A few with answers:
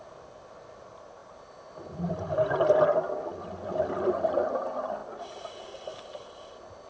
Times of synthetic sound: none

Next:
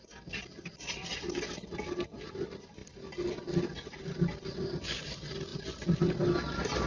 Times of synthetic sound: none

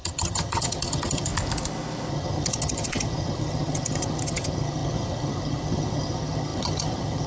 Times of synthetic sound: 0.0-1.3 (vocoder, HiFi-GAN); 2.1-7.3

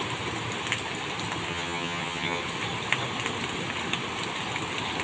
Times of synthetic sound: 1.5-2.4 (vocoder, HiFi-GAN)

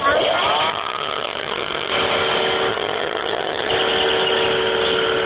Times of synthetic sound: 0.7-1.9 (vocoder, HiFi-GAN); 2.7-3.7

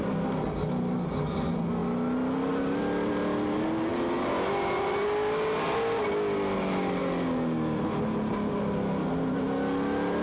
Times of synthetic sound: none